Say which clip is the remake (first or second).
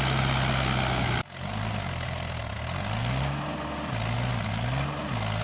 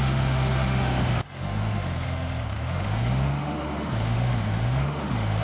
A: second